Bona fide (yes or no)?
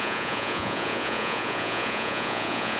no